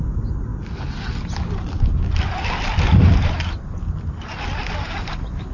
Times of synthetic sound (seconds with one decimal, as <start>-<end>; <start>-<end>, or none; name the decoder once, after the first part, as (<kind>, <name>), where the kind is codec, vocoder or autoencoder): none